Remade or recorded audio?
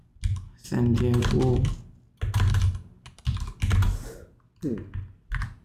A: recorded